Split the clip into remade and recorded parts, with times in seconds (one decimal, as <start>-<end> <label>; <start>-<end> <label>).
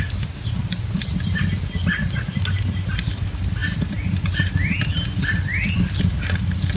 0.0-6.8 recorded